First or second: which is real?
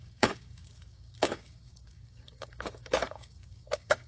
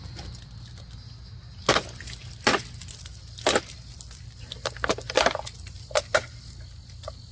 second